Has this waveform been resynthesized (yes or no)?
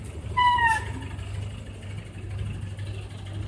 no